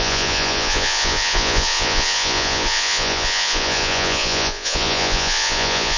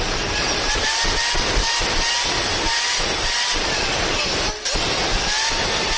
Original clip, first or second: second